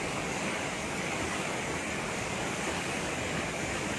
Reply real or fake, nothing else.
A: fake